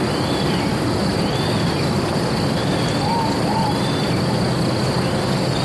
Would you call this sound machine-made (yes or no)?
no